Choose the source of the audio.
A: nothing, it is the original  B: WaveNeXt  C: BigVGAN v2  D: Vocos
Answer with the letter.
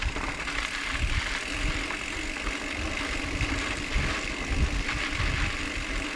A